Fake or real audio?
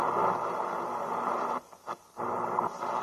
fake